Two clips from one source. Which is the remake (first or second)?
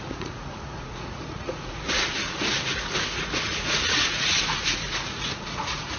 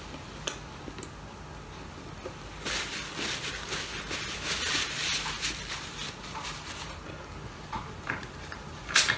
first